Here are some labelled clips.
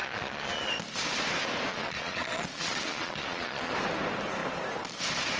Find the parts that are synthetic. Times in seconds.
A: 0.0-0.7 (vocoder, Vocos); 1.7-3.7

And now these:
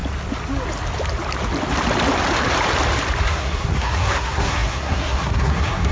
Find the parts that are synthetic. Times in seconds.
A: 3.2-5.9 (codec, SNAC)

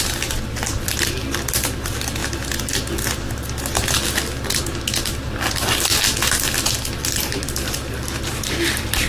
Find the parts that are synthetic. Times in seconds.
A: 0.0-2.2 (vocoder, BigVGAN v2); 4.6-5.9; 6.9-9.1

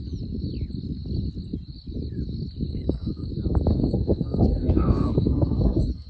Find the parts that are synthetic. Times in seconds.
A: 2.7-3.3 (codec, SNAC); 3.7-6.1